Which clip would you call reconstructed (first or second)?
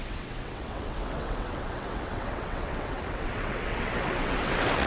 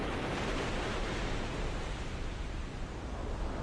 first